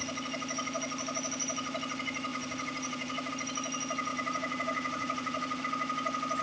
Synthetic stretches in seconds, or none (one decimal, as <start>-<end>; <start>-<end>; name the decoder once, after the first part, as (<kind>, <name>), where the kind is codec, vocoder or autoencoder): 2.3-3.3 (vocoder, Vocos); 4.1-5.6